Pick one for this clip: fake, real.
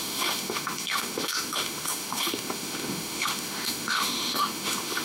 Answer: fake